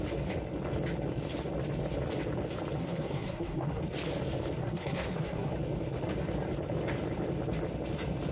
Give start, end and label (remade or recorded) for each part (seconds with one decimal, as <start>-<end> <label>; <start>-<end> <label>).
0.0-2.8 recorded; 2.8-3.8 remade; 3.8-4.6 recorded; 4.6-5.5 remade; 5.5-8.3 recorded